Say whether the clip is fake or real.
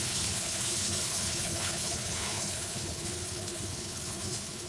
fake